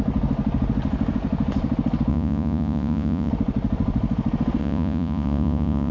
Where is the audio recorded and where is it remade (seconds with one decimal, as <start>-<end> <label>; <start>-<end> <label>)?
0.0-2.1 recorded; 2.1-3.3 remade; 3.3-4.6 recorded; 4.6-5.9 remade